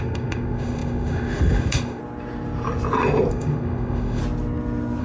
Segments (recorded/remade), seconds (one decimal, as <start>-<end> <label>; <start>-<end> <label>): 0.0-2.0 remade; 2.0-3.3 recorded; 3.3-4.2 remade; 4.2-5.0 recorded